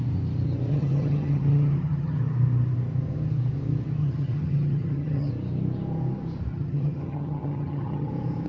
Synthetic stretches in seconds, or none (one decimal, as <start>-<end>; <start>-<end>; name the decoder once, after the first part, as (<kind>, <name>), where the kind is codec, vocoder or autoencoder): 0.7-2.2 (vocoder, HiFi-GAN); 4.0-5.3; 6.5-8.1